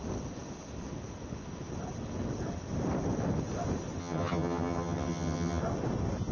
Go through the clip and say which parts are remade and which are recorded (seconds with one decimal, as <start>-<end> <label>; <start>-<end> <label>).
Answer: 0.0-4.0 recorded; 4.0-5.6 remade; 5.6-6.3 recorded